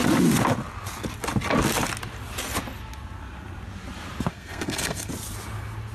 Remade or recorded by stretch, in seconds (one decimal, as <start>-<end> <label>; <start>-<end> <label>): 0.0-4.3 recorded; 4.3-5.1 remade; 5.1-5.9 recorded